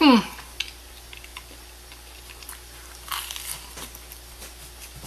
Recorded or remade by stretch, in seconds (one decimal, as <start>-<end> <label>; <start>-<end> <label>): 0.0-5.1 recorded